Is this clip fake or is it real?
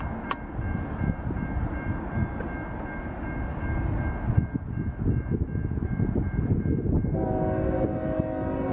real